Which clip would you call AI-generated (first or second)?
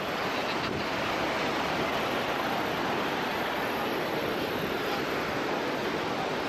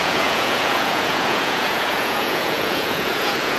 second